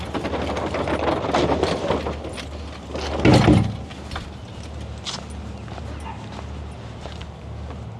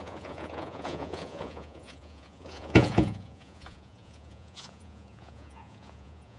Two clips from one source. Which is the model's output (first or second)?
second